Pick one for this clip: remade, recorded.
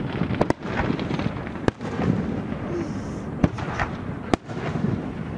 remade